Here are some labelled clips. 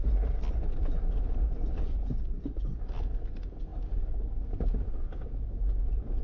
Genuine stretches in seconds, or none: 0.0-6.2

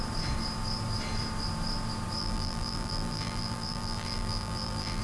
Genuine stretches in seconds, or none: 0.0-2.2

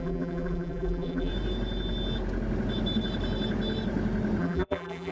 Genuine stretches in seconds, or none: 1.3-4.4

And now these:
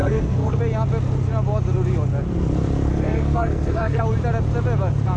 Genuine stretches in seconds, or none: 0.6-2.9; 4.0-5.2

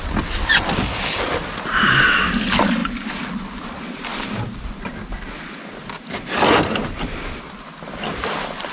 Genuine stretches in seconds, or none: 0.0-8.7